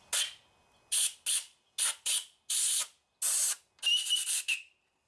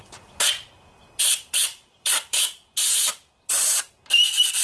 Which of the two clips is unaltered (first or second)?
first